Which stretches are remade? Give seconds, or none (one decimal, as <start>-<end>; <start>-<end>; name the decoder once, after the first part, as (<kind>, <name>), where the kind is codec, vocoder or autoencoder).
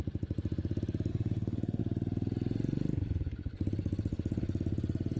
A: 1.1-1.8 (codec, SNAC)